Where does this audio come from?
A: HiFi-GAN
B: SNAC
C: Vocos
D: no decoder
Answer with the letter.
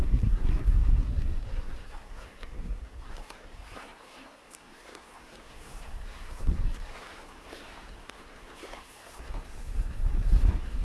B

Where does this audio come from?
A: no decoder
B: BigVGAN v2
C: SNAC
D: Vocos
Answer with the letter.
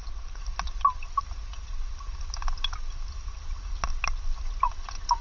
A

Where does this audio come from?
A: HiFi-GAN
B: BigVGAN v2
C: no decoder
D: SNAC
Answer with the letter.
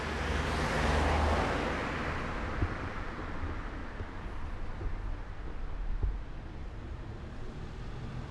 C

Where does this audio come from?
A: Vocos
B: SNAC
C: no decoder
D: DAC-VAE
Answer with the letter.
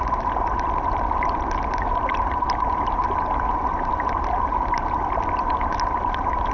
C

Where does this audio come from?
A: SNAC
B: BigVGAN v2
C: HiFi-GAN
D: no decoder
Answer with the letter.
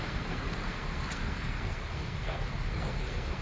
A